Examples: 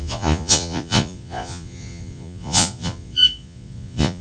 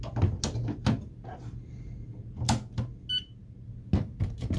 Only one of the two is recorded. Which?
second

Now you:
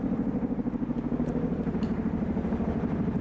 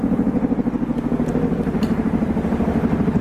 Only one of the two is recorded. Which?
second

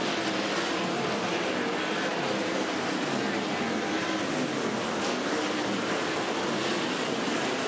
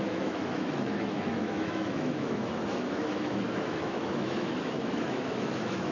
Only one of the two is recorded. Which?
first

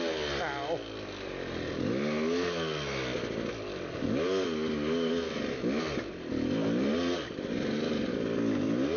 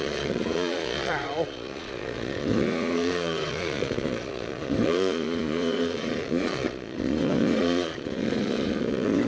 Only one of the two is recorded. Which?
first